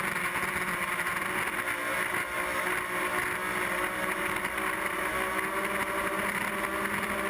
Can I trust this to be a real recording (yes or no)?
yes